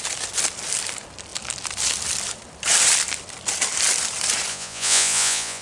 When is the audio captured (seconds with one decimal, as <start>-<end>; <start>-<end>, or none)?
0.0-4.5

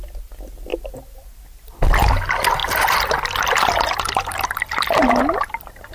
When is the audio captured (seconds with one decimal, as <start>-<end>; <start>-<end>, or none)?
0.0-5.9

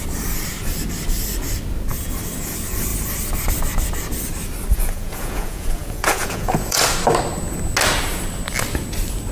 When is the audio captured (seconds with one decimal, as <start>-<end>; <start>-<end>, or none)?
0.0-4.7; 6.8-9.3

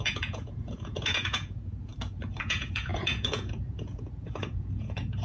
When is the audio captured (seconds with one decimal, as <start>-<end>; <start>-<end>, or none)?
1.9-2.4

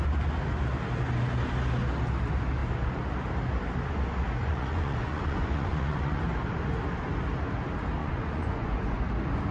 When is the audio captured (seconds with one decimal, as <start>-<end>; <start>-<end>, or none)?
0.0-4.4; 6.2-8.0; 9.0-9.5

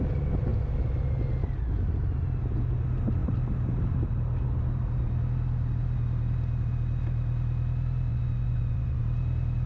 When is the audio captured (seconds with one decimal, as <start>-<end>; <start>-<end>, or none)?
0.0-8.1; 9.0-9.7

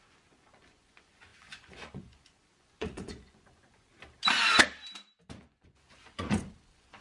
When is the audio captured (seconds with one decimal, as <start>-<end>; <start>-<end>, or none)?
3.9-5.4